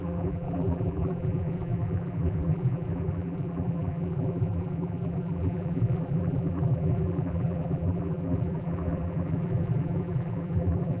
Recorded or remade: remade